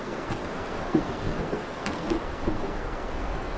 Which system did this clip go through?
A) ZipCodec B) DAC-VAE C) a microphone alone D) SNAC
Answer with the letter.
D